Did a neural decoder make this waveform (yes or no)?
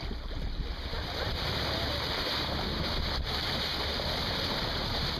no